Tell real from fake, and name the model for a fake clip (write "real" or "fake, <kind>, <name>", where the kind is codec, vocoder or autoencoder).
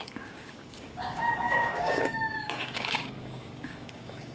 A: fake, codec, DAC